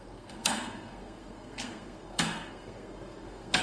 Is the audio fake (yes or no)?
yes